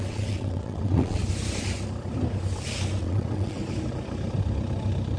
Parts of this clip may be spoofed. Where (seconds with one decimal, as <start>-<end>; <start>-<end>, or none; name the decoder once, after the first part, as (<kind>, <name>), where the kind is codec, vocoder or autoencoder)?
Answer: 0.0-1.2 (vocoder, WaveNeXt); 3.0-3.6